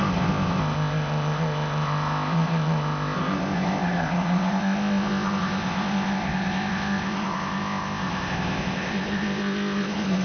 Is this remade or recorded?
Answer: remade